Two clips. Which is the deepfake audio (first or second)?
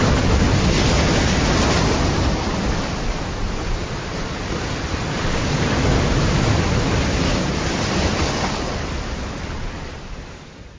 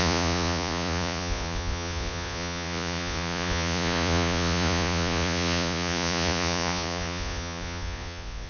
second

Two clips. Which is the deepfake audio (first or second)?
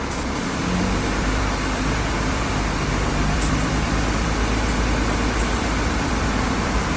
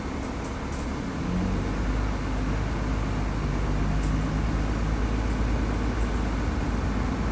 first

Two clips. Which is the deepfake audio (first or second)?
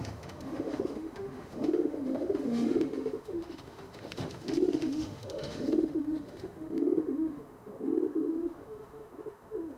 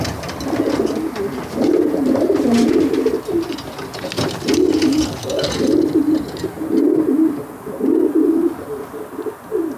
first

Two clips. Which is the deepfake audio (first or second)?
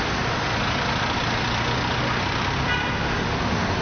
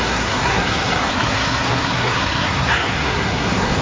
second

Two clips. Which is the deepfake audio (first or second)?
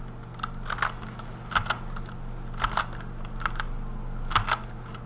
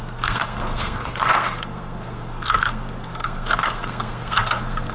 second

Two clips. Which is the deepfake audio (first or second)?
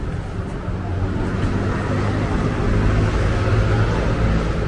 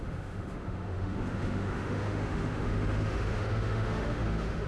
second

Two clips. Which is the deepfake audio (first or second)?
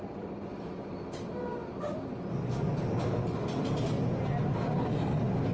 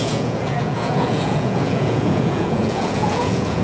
second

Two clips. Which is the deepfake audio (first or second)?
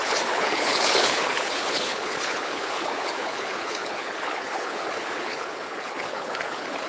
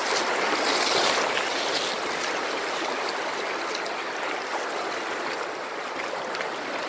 first